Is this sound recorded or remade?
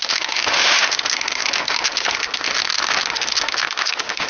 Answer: remade